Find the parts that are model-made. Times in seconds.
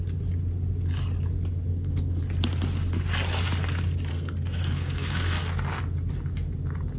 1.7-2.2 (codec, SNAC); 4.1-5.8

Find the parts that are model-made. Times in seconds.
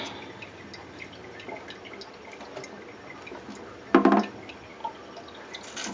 none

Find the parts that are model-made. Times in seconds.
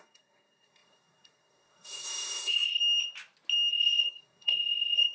0.0-2.8 (codec, SNAC); 3.7-5.1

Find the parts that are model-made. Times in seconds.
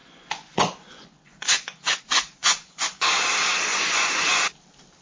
0.0-2.0 (vocoder, Vocos); 2.4-3.1; 3.7-4.4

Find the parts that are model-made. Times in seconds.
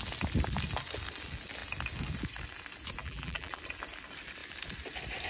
3.0-3.6 (vocoder, BigVGAN v2)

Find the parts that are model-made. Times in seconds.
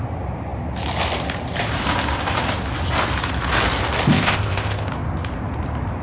4.1-4.9 (codec, ZipCodec)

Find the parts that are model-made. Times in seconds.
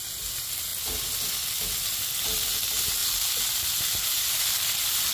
none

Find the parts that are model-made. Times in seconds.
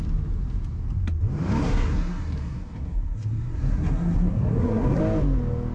1.6-5.0 (codec, SNAC)